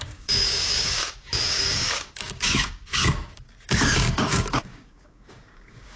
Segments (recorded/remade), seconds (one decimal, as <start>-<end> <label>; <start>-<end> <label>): 0.0-6.0 remade